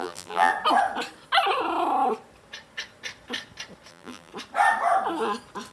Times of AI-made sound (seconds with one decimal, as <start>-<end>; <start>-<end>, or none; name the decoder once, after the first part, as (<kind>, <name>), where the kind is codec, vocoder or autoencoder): 0.0-0.5 (vocoder, BigVGAN v2); 3.9-4.3